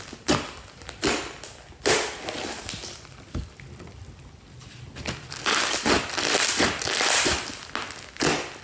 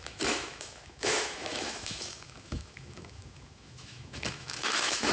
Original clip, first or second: first